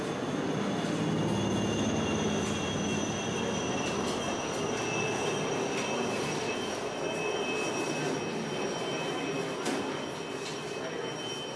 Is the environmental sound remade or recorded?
recorded